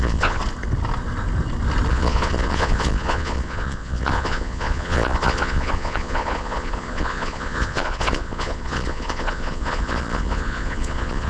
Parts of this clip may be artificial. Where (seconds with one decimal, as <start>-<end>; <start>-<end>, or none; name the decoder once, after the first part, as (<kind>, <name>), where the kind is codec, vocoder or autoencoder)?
0.0-0.4 (vocoder, Vocos); 1.9-11.3

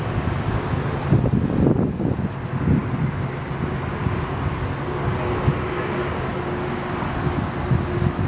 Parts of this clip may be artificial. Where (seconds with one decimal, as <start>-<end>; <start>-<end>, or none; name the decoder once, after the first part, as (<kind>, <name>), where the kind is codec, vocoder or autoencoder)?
none

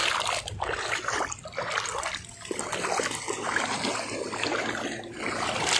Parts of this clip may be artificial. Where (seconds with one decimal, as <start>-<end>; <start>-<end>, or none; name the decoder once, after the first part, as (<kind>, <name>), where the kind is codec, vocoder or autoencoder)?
none

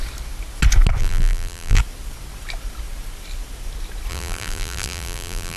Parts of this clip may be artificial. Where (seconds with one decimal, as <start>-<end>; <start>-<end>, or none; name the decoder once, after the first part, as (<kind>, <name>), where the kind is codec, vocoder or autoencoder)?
1.0-1.8 (vocoder, BigVGAN v2); 4.1-5.6

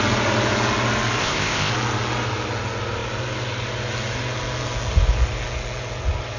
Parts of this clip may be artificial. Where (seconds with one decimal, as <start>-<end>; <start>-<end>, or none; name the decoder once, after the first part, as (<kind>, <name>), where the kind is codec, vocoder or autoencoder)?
1.2-1.7 (codec, ZipCodec)